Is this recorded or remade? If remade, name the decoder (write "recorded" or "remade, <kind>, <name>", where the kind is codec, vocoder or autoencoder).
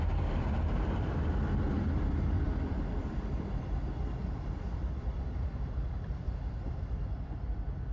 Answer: remade, vocoder, BigVGAN v2